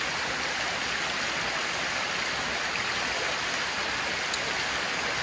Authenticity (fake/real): real